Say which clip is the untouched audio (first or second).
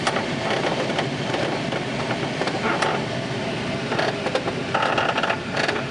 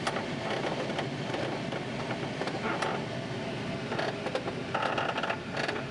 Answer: second